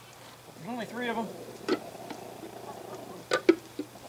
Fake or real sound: real